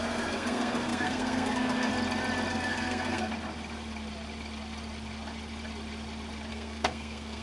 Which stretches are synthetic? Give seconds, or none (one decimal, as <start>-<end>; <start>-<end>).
0.0-1.9; 2.5-3.3; 6.5-7.4